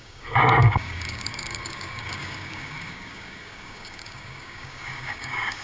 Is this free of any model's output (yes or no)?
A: no